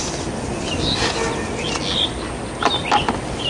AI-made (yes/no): no